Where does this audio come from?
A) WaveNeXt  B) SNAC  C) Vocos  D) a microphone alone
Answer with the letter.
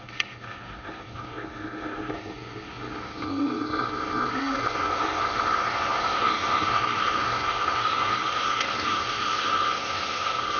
B